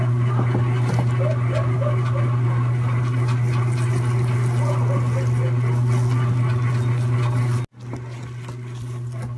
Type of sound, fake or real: real